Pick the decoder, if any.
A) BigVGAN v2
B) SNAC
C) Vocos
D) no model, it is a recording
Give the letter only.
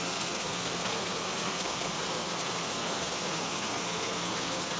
B